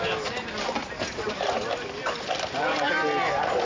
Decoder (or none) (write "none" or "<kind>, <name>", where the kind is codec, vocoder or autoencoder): none